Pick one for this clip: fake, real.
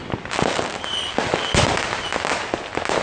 real